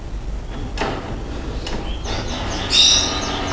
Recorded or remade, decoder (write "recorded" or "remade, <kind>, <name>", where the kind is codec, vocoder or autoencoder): recorded